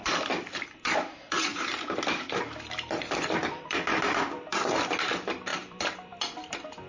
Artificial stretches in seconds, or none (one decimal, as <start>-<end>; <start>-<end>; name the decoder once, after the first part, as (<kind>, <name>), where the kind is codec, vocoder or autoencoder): 0.0-0.5 (vocoder, BigVGAN v2); 1.5-4.9; 5.5-6.2